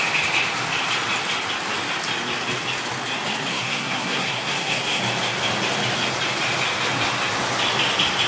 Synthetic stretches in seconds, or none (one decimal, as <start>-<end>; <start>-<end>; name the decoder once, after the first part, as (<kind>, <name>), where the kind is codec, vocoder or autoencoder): 3.5-5.0 (codec, SNAC)